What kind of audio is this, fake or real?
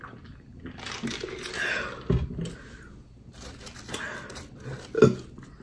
real